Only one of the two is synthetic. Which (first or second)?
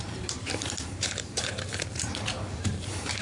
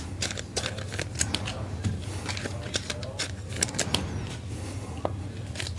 first